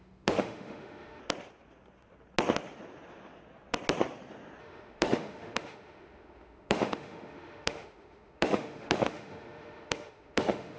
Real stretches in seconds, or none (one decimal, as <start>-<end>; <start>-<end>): 1.2-4.6